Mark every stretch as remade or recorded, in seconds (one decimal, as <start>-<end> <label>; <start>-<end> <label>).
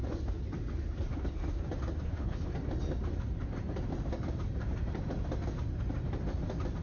0.0-1.0 recorded; 1.0-1.4 remade; 1.4-2.1 recorded; 2.1-2.5 remade; 2.5-6.8 recorded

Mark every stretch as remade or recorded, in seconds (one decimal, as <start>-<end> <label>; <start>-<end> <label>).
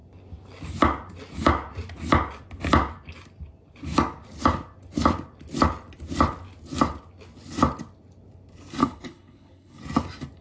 0.0-8.8 recorded; 8.8-9.8 remade; 9.8-10.4 recorded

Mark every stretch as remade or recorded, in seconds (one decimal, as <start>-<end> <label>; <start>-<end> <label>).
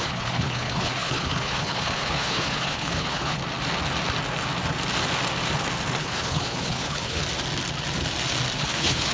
0.0-3.4 remade; 3.4-6.0 recorded; 6.0-7.2 remade; 7.2-8.6 recorded; 8.6-9.1 remade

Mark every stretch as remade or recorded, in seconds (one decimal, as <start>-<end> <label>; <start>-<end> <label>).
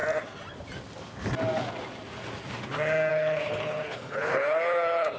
0.0-3.1 recorded; 3.1-5.2 remade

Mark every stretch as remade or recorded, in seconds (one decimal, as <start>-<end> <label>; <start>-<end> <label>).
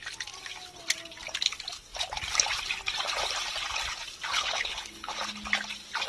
0.0-4.3 recorded; 4.3-5.2 remade; 5.2-6.1 recorded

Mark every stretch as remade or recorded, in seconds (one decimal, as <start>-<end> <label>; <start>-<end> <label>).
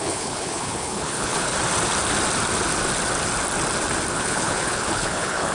0.0-1.5 remade; 1.5-4.1 recorded; 4.1-5.5 remade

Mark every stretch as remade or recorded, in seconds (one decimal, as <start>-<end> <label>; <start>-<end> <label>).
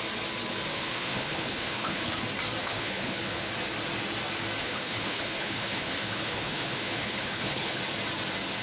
0.0-0.7 recorded; 0.7-2.1 remade; 2.1-2.6 recorded; 2.6-3.5 remade; 3.5-4.6 recorded; 4.6-7.8 remade; 7.8-8.6 recorded